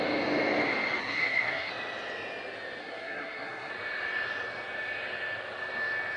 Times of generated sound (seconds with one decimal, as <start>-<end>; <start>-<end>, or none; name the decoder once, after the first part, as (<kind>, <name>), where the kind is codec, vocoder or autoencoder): 1.0-1.7 (codec, SNAC); 2.8-3.7